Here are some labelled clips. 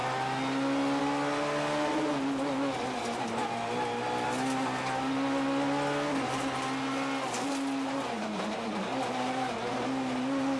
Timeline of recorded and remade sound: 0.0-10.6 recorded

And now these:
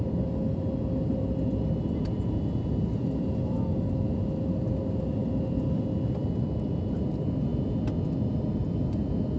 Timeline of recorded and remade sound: 0.0-9.4 recorded

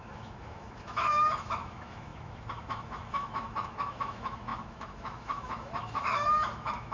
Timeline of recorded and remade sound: 0.0-6.9 remade

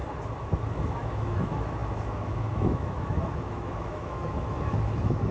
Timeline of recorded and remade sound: 0.0-0.5 recorded; 0.5-5.3 remade

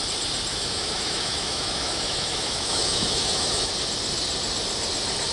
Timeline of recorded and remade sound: 0.0-0.5 recorded; 0.5-3.7 remade; 3.7-5.3 recorded

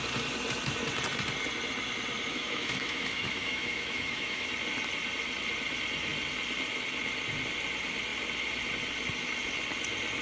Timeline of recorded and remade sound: 0.0-2.3 recorded; 2.3-4.5 remade; 4.5-10.2 recorded

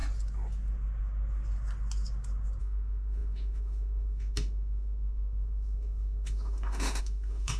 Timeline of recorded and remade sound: 0.0-2.6 recorded; 2.6-7.6 remade